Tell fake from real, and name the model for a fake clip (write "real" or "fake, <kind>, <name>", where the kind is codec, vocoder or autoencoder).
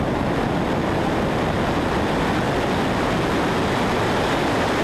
real